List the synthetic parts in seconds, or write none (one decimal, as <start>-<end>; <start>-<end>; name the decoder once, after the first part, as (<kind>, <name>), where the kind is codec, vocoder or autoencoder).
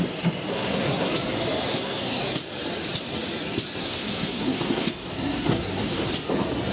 0.5-1.1 (codec, SNAC); 1.7-2.2; 3.8-6.1